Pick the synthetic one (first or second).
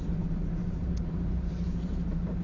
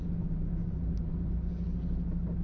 first